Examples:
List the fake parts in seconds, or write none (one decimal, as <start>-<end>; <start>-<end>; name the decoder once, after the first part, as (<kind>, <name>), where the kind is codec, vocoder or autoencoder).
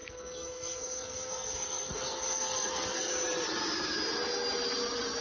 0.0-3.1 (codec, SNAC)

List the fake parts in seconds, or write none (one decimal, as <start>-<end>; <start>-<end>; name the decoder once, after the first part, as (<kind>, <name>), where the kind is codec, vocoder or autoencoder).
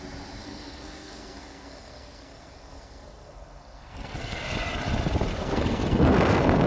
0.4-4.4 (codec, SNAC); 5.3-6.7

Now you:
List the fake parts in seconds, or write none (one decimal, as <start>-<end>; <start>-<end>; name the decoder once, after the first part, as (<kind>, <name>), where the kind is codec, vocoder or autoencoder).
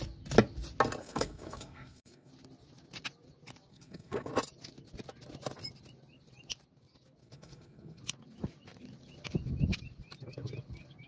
1.0-2.3 (codec, SNAC); 3.7-4.3; 7.2-8.0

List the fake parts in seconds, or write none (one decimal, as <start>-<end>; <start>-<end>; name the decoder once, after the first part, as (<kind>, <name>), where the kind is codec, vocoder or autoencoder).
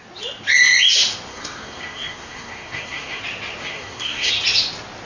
1.3-3.2 (codec, SNAC); 3.6-4.3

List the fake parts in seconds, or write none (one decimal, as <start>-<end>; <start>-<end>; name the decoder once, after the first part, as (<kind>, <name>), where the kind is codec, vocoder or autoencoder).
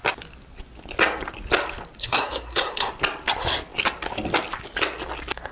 2.0-2.9 (codec, SNAC)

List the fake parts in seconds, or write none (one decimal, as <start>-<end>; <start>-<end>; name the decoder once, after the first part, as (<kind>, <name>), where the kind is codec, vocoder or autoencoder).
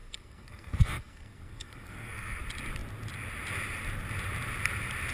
0.0-2.4 (codec, SNAC)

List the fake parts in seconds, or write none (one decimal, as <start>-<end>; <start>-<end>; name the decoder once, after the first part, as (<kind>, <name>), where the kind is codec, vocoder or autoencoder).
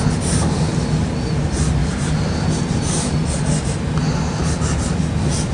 none